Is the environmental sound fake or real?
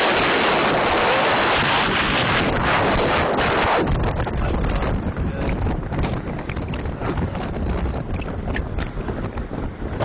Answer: real